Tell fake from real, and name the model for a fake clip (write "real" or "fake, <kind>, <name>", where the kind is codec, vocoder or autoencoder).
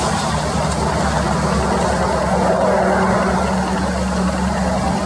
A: real